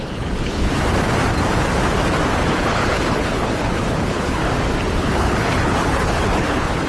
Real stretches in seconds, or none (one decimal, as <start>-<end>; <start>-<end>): 0.7-2.5; 4.4-5.0

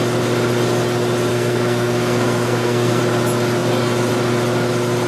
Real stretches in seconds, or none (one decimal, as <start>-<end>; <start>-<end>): 0.0-1.3; 3.0-5.1

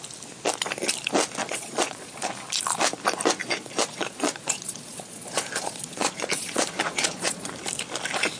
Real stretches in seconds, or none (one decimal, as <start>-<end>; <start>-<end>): 0.0-1.4; 2.3-3.4; 7.5-8.4

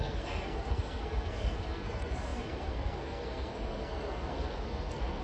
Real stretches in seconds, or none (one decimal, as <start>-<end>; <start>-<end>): none

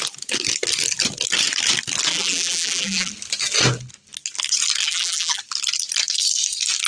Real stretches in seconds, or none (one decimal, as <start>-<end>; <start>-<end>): 0.0-2.1; 3.1-4.8; 5.4-6.9

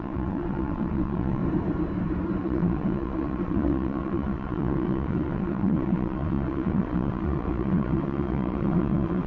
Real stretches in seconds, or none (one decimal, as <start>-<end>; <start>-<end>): 1.4-2.4

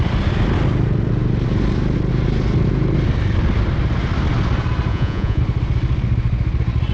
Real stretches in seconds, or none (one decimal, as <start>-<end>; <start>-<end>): 0.0-4.9; 5.4-6.9

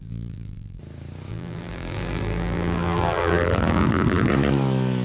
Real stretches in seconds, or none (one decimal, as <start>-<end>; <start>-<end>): 0.8-1.3; 4.3-5.0